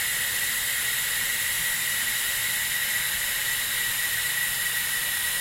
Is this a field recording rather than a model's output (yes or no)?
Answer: yes